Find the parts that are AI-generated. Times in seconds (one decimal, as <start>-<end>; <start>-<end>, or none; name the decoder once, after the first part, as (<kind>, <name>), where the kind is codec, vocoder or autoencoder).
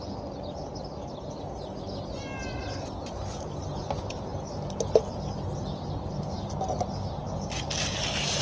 none